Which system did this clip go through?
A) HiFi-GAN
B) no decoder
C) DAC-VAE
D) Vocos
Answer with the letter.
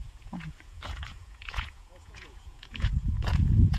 D